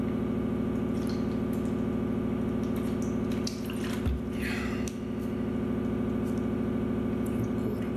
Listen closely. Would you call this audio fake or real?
real